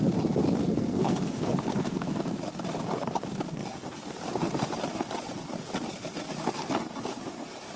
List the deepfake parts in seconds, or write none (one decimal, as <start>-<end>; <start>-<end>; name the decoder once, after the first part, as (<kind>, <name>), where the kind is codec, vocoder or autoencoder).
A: 0.6-2.3 (codec, SNAC)